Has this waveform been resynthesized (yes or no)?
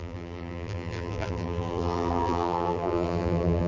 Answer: yes